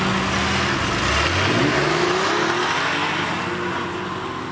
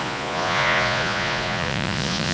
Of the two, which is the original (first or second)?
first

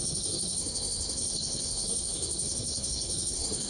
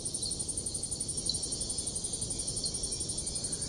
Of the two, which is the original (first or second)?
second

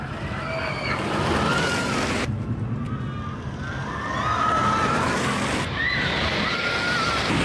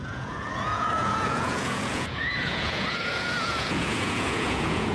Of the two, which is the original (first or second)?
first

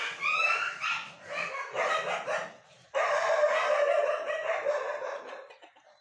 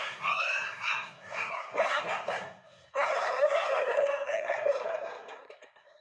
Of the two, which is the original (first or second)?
first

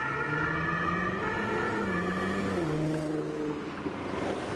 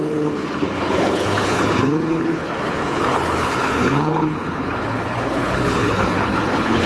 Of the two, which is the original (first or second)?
first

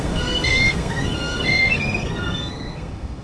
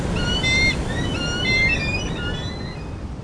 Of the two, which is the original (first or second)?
second